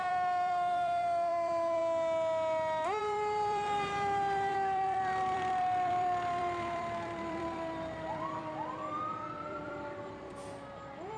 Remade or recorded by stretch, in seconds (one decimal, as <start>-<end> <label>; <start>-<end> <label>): 0.0-1.8 remade; 1.8-3.0 recorded; 3.0-10.4 remade; 10.4-11.2 recorded